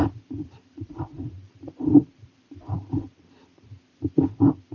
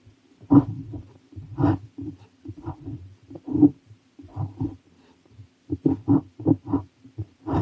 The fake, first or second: first